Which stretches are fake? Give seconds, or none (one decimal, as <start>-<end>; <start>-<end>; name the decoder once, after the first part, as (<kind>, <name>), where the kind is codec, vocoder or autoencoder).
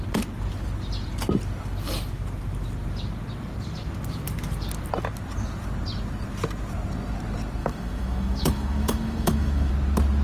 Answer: 7.6-9.7 (autoencoder, DAC-VAE)